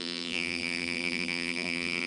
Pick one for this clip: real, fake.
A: fake